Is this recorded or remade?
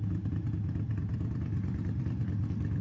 remade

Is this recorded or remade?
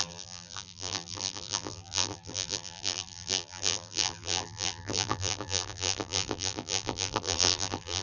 remade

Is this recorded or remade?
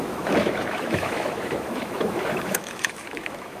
remade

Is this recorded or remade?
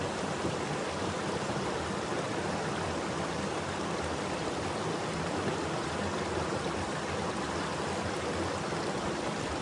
recorded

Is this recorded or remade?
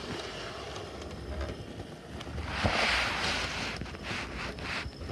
recorded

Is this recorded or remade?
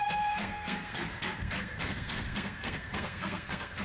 remade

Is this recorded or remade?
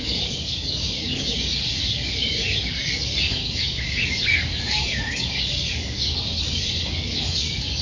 remade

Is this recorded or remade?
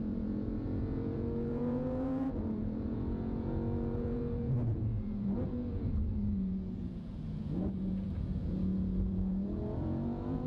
remade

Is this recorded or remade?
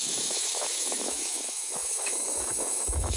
remade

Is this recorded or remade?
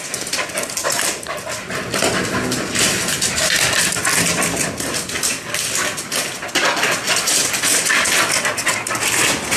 recorded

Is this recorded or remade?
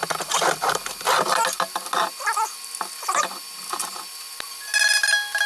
recorded